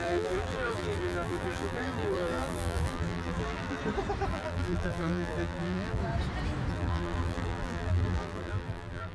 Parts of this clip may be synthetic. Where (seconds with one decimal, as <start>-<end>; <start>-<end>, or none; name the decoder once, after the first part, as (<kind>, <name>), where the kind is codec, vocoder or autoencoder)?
0.0-3.8 (vocoder, BigVGAN v2); 4.3-6.0; 6.7-9.1